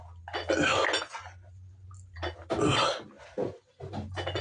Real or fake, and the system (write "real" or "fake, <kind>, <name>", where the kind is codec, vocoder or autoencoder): real